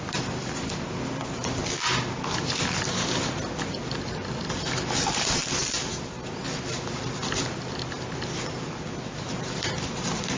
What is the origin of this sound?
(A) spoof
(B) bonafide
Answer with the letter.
B